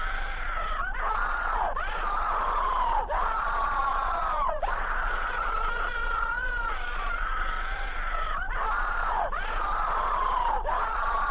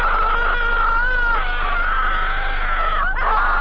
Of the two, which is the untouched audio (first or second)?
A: second